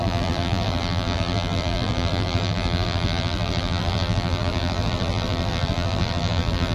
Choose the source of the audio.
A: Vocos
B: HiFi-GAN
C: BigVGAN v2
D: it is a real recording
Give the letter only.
C